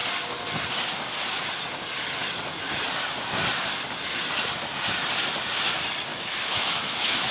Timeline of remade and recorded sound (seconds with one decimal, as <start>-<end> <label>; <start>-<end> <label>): 0.0-6.1 recorded; 6.1-7.3 remade